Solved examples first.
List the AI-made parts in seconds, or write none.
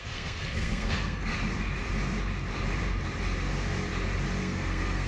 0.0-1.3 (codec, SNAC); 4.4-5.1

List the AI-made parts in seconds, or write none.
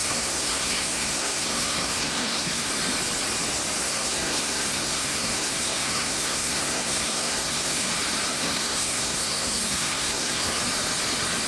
0.0-2.7 (codec, SNAC); 3.8-7.9; 8.3-10.6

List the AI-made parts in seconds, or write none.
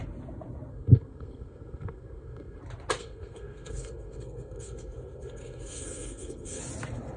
0.7-2.6 (codec, SNAC); 3.0-6.6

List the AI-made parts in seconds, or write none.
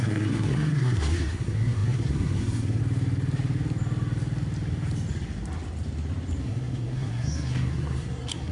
0.0-2.8 (codec, SNAC); 6.4-8.5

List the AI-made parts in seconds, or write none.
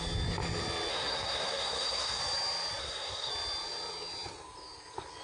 0.9-2.2 (codec, SNAC); 2.8-3.3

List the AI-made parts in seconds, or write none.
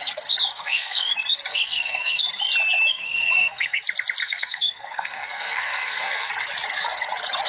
0.5-1.1 (codec, SNAC); 1.5-2.2; 2.9-3.8; 4.2-6.3